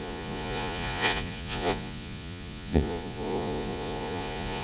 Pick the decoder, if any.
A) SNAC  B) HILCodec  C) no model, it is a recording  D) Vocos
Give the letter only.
D